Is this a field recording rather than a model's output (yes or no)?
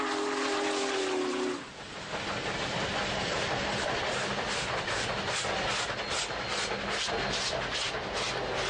yes